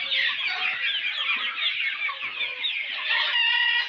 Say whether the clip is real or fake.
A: real